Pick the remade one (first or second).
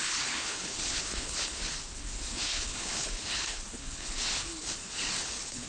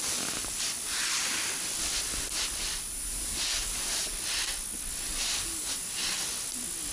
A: first